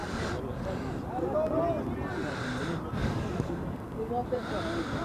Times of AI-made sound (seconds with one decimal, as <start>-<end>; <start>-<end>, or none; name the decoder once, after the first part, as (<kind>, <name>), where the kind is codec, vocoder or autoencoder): 3.0-4.1 (codec, DAC)